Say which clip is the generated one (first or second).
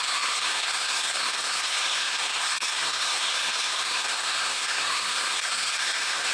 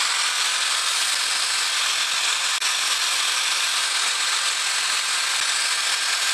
first